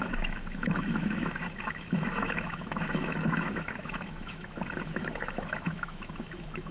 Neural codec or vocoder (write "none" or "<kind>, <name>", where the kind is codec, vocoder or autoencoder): autoencoder, DAC-VAE